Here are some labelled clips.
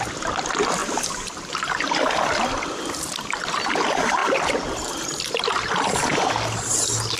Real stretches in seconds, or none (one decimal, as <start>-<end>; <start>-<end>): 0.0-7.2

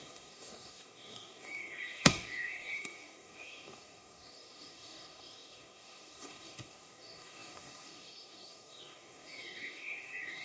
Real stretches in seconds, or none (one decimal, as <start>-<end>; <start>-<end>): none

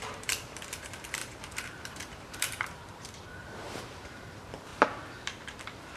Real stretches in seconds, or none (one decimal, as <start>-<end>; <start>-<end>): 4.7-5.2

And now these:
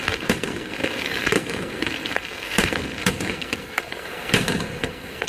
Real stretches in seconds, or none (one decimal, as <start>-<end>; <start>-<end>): none

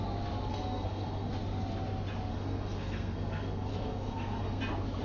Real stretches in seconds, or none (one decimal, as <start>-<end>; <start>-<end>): 0.0-0.5; 1.3-2.3; 4.6-5.0